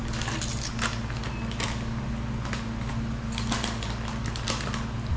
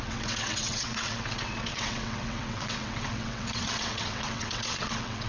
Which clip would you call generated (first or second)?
second